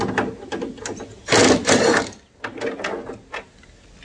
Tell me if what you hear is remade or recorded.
recorded